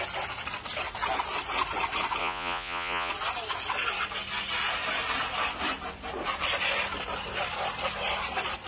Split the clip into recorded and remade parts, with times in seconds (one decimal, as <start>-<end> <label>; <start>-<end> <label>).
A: 0.0-2.2 recorded; 2.2-3.1 remade; 3.1-8.7 recorded